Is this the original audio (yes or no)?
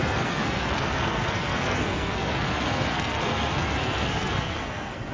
no